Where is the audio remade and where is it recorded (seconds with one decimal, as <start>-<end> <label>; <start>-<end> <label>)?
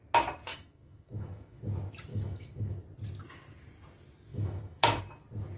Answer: 0.0-0.5 recorded; 0.5-1.6 remade; 1.6-2.1 recorded; 2.1-2.8 remade; 2.8-4.3 recorded; 4.3-5.0 remade; 5.0-5.6 recorded